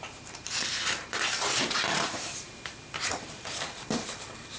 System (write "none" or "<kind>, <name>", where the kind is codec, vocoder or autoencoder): vocoder, BigVGAN v2